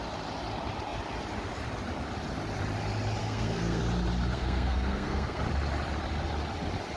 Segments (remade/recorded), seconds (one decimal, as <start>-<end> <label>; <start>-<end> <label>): 0.0-3.2 recorded; 3.2-3.8 remade; 3.8-4.3 recorded; 4.3-5.4 remade; 5.4-7.0 recorded